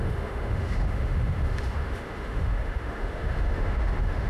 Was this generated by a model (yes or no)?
yes